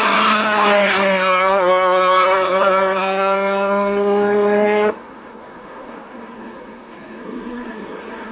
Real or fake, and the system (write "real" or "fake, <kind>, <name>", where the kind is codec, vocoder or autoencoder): fake, codec, SNAC